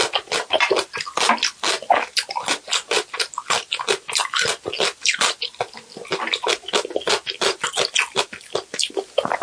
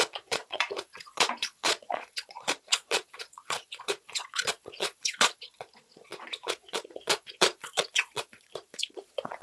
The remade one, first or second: second